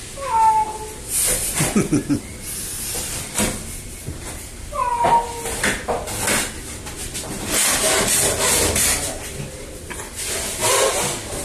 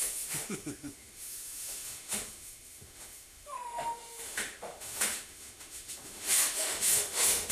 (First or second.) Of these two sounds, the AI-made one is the second